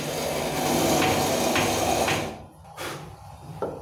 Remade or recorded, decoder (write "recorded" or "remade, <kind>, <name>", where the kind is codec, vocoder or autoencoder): recorded